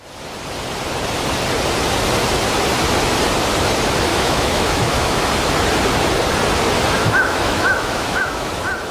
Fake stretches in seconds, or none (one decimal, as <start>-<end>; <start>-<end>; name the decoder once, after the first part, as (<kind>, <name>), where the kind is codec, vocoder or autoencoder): 4.1-5.3 (autoencoder, DAC-VAE); 7.0-8.5